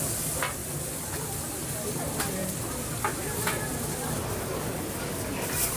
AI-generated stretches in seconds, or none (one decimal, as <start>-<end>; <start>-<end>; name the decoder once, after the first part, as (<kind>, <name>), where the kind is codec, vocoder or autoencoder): 0.6-2.0 (vocoder, BigVGAN v2); 2.4-4.6

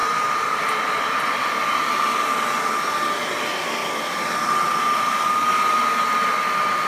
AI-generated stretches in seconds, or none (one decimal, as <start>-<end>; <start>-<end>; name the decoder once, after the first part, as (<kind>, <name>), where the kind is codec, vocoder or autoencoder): 0.0-2.2 (vocoder, BigVGAN v2)

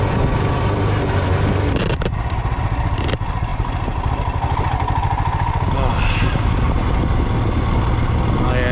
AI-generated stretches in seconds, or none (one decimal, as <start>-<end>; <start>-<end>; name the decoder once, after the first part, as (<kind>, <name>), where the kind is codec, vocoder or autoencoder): 3.5-4.1 (vocoder, BigVGAN v2)

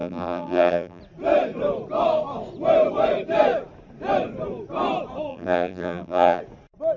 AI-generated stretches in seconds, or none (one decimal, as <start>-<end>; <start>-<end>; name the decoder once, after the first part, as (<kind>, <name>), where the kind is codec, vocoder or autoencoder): 0.0-1.0 (vocoder, BigVGAN v2); 5.3-6.4

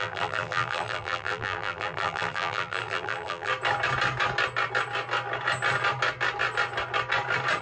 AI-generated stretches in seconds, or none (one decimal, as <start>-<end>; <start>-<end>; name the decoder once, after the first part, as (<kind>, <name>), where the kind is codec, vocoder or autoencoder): 0.0-3.5 (vocoder, BigVGAN v2)

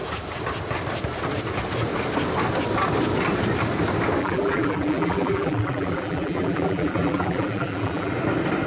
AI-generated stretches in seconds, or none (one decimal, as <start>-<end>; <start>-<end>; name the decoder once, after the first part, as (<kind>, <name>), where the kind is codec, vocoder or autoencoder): 4.2-8.1 (vocoder, BigVGAN v2)

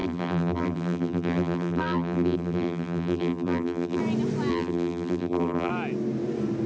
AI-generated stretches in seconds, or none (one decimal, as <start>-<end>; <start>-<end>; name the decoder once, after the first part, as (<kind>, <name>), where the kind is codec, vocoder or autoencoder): 0.0-4.0 (vocoder, BigVGAN v2); 4.5-5.7